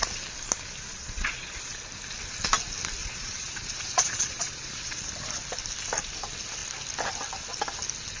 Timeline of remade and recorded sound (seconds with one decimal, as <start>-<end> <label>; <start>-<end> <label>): 0.0-0.9 recorded; 0.9-1.8 remade; 1.8-3.0 recorded; 3.0-5.0 remade; 5.0-8.2 recorded

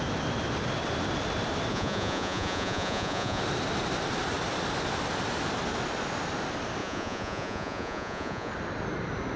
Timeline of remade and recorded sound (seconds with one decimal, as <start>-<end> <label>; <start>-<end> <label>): 0.0-1.7 recorded; 1.7-3.4 remade; 3.4-6.8 recorded; 6.8-8.5 remade; 8.5-9.4 recorded

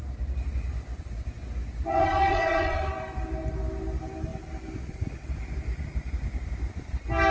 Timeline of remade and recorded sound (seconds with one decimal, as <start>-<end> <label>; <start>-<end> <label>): 0.0-1.9 recorded; 1.9-2.9 remade; 2.9-7.3 recorded

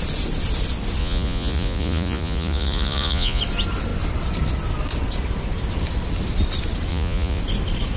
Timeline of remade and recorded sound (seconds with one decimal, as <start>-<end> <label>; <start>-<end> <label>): 0.0-1.0 recorded; 1.0-3.4 remade; 3.4-6.9 recorded; 6.9-7.4 remade; 7.4-8.0 recorded

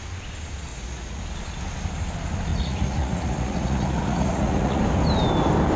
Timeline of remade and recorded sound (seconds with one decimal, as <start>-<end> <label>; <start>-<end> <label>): 0.0-0.7 recorded; 0.7-1.2 remade; 1.2-2.5 recorded; 2.5-4.8 remade; 4.8-5.8 recorded

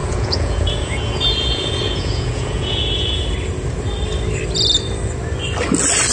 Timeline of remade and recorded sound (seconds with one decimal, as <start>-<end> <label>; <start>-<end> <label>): 0.0-3.2 remade; 3.2-6.1 recorded

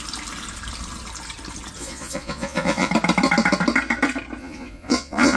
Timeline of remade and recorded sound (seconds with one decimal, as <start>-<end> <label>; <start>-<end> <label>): 0.0-1.8 recorded; 1.8-2.9 remade; 2.9-4.4 recorded; 4.4-5.4 remade